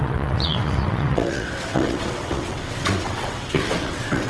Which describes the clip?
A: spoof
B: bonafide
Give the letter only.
A